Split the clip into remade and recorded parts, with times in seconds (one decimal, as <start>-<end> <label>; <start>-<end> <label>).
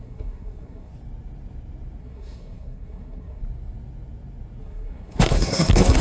0.0-0.9 remade; 0.9-2.0 recorded; 2.0-3.4 remade; 3.4-4.6 recorded; 4.6-6.0 remade